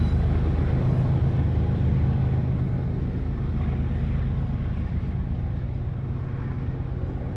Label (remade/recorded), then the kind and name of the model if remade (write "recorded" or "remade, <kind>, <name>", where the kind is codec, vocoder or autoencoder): recorded